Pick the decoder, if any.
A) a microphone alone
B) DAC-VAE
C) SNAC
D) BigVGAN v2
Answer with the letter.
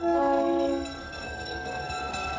C